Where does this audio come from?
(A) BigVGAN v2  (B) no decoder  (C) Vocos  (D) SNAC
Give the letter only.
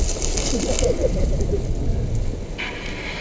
B